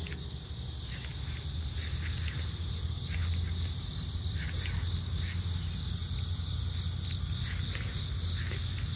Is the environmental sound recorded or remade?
recorded